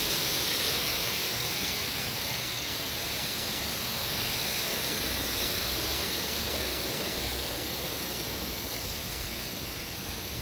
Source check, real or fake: fake